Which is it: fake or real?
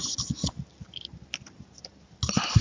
real